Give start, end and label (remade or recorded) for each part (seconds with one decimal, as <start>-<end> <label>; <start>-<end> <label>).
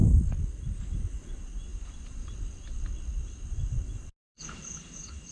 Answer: 0.0-5.3 recorded